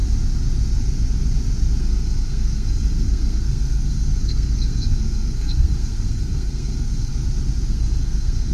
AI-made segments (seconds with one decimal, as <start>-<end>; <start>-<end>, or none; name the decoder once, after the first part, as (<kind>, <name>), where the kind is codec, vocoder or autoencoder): 1.8-7.1 (codec, SNAC); 7.7-8.5